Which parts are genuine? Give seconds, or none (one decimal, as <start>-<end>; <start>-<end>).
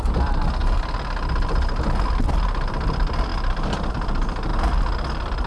0.6-2.7; 4.5-5.5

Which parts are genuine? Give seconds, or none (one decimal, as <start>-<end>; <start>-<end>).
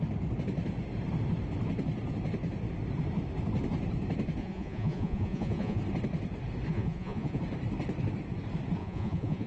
0.0-4.4; 5.8-6.7; 7.4-8.8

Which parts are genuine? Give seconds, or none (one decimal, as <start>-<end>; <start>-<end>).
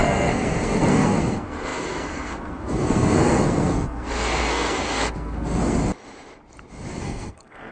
5.8-6.9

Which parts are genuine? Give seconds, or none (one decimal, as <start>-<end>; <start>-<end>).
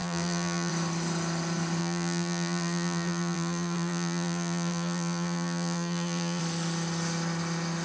0.7-1.8; 6.4-7.8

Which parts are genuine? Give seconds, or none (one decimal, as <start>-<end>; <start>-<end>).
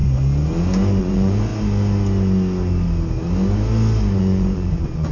0.0-1.0; 1.5-4.2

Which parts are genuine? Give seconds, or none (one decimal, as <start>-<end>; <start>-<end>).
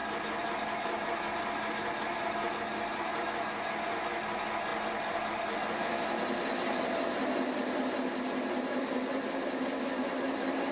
0.0-10.7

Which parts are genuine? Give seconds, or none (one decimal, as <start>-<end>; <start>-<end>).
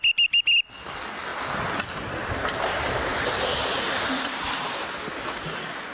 0.0-5.9